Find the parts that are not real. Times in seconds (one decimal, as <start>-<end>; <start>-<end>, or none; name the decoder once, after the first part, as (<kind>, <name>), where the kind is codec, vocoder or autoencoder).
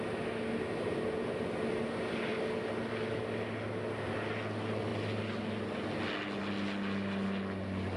none